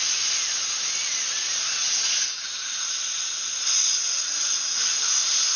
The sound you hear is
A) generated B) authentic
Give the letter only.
B